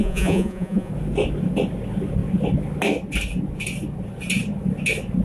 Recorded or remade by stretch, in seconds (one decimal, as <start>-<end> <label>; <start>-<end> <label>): 0.0-0.9 remade; 0.9-5.2 recorded